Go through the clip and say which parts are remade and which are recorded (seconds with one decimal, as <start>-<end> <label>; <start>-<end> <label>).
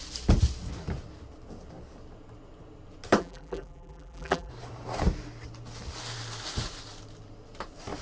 0.0-3.2 recorded; 3.2-4.5 remade; 4.5-8.0 recorded